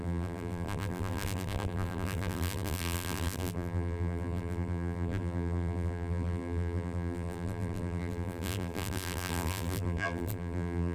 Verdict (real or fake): fake